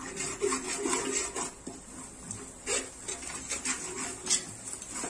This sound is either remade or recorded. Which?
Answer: recorded